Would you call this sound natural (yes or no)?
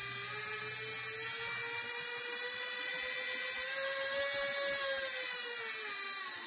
yes